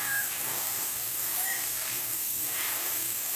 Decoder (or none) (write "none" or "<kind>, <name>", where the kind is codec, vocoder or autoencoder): codec, DAC